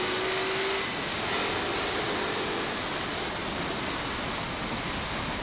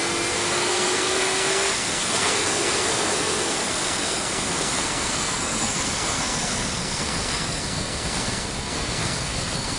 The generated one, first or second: second